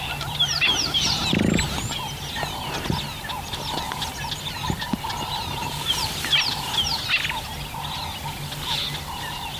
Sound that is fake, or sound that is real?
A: real